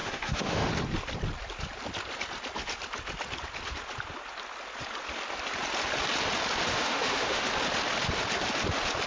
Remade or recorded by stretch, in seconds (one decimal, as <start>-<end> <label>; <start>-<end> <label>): 0.0-0.7 remade; 0.7-6.7 recorded; 6.7-7.4 remade; 7.4-9.1 recorded